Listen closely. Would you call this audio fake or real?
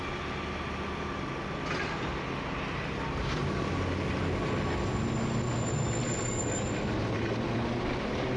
real